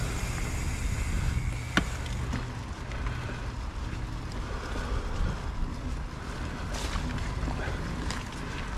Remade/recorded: recorded